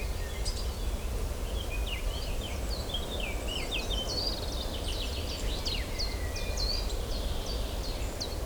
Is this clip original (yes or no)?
yes